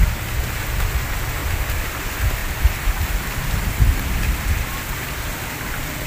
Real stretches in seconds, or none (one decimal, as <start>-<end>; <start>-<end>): 0.0-1.4; 2.0-2.4; 3.0-6.1